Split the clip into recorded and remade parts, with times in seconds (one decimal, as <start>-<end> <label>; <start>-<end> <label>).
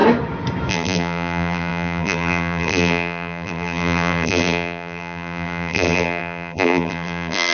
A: 0.0-0.7 recorded; 0.7-7.5 remade